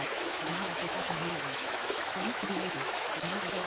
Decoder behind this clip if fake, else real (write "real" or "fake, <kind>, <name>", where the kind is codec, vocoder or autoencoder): fake, autoencoder, DAC-VAE